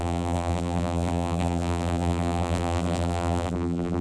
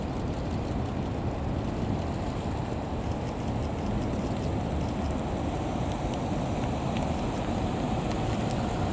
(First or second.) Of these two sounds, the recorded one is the second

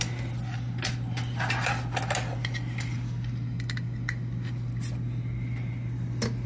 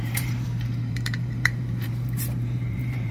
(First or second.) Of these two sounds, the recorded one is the first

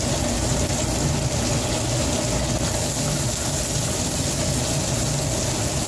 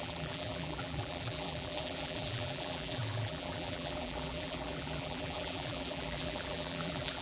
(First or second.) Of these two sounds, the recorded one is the first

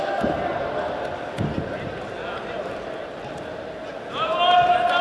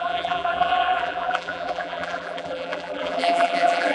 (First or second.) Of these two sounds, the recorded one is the first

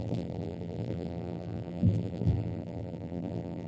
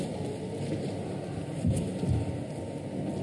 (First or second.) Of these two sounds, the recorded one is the second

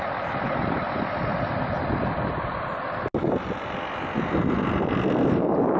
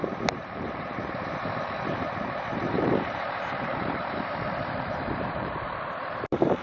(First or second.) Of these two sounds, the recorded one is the first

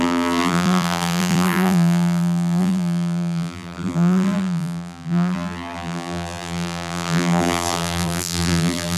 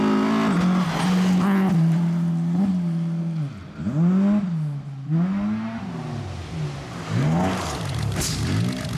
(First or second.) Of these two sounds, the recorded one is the second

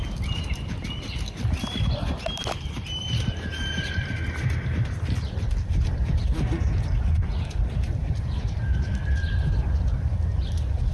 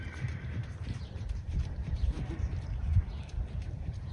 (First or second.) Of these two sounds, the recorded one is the first